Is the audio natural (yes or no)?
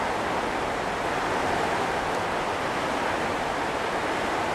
yes